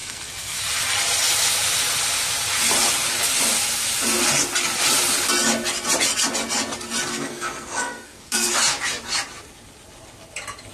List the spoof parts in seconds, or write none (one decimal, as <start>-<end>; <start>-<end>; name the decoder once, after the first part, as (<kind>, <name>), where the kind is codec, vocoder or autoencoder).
0.0-0.6 (codec, SNAC); 7.1-8.5